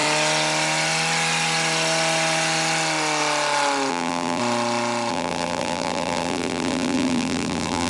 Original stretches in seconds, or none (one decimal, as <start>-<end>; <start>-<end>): 0.0-3.9; 4.4-5.1